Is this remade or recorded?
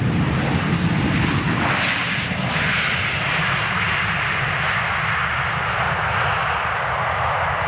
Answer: recorded